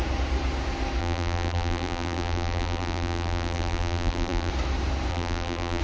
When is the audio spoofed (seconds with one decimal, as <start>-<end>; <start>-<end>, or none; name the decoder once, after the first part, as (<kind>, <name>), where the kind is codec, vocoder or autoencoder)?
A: 1.0-4.5 (vocoder, BigVGAN v2); 5.1-5.8